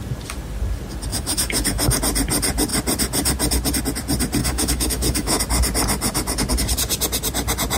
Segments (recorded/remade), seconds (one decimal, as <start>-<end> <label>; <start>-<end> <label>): 0.0-1.1 recorded; 1.1-2.0 remade; 2.0-4.4 recorded; 4.4-5.4 remade; 5.4-7.8 recorded